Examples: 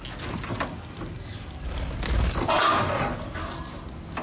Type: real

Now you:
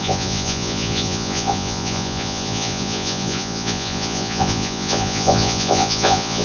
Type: fake